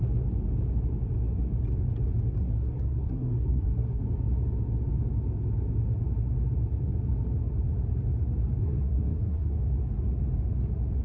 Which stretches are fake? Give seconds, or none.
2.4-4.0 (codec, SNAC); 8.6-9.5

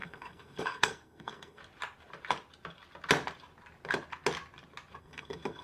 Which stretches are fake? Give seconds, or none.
0.0-1.6 (codec, SNAC); 5.0-5.6

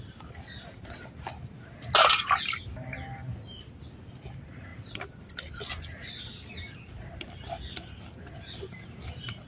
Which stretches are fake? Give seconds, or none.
none

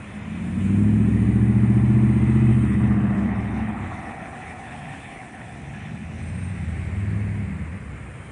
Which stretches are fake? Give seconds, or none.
2.5-6.2 (codec, HILCodec)

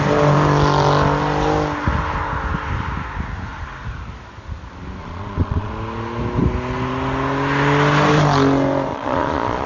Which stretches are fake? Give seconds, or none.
5.0-5.7 (vocoder, Vocos); 8.9-9.7

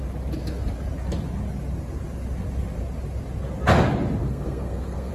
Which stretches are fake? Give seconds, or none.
4.2-5.1 (codec, SNAC)

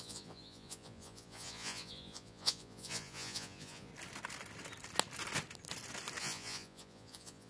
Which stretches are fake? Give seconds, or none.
0.0-3.9 (vocoder, Vocos); 6.2-7.5